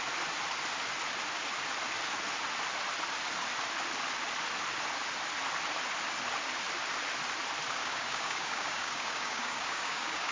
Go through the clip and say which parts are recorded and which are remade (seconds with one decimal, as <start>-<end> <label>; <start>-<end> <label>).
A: 0.0-7.8 recorded; 7.8-10.3 remade